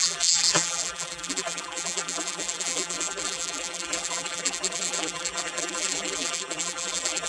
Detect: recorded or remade remade